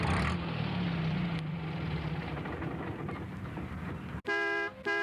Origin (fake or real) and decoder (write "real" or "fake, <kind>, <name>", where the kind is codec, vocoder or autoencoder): real